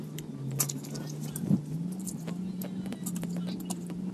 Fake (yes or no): no